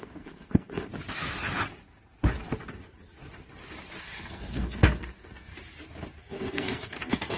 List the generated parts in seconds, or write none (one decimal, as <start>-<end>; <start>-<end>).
0.0-0.9; 4.0-5.5; 6.2-7.4